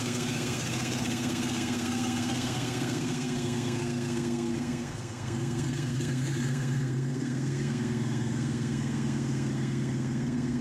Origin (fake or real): fake